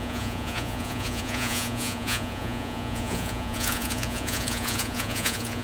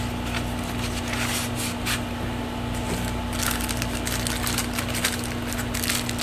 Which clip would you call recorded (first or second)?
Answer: second